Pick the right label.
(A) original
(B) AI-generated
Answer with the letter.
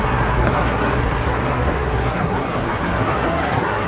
B